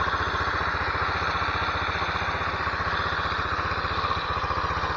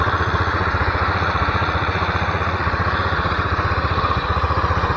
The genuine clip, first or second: first